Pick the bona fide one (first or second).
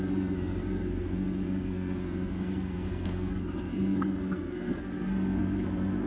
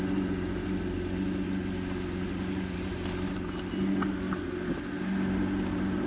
second